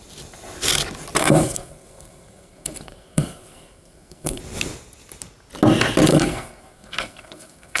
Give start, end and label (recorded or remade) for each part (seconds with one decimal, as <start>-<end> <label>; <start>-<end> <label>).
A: 0.0-1.2 recorded; 1.2-4.4 remade; 4.4-6.1 recorded; 6.1-7.8 remade